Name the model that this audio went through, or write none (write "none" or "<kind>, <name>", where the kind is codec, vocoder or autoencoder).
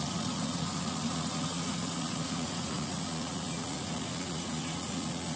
vocoder, Vocos